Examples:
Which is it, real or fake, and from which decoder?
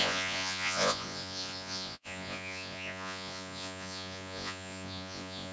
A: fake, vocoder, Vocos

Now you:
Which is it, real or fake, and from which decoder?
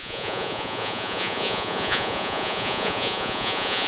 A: fake, vocoder, Vocos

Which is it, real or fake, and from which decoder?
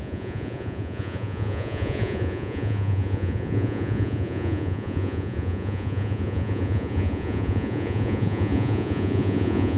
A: fake, vocoder, Vocos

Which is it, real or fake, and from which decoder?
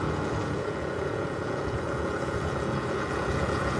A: fake, vocoder, Vocos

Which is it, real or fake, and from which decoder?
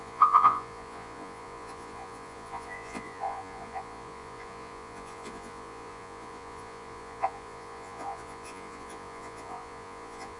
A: fake, vocoder, Vocos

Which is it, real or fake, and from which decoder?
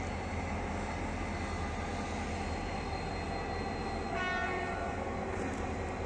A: real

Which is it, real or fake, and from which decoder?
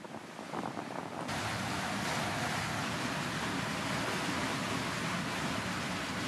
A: real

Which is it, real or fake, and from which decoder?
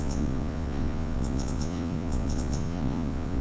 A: fake, vocoder, Vocos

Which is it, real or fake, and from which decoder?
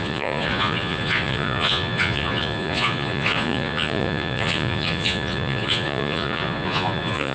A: fake, vocoder, Vocos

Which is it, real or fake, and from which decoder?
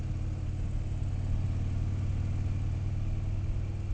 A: real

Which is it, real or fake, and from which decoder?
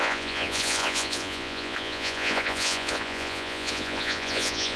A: fake, vocoder, Vocos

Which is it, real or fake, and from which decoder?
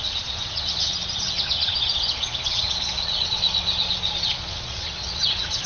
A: fake, vocoder, Vocos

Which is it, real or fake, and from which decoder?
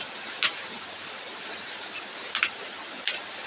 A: real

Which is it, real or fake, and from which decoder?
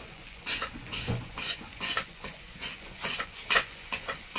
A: fake, vocoder, Vocos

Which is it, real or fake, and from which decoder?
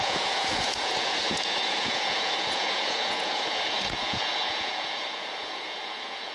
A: fake, vocoder, Vocos